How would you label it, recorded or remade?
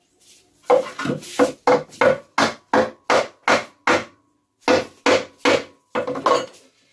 recorded